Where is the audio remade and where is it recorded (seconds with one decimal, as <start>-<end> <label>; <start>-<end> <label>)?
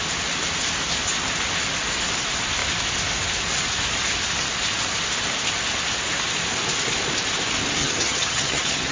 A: 0.0-7.8 recorded; 7.8-8.9 remade